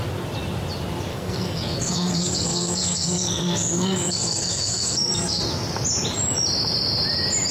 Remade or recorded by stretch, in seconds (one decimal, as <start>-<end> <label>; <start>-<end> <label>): 0.0-1.1 recorded; 1.1-5.4 remade; 5.4-7.5 recorded